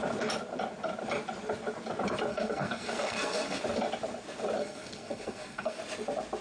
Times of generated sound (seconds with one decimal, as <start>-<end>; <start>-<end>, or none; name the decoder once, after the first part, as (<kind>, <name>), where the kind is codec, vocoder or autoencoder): 2.3-3.6 (codec, SNAC); 4.6-5.8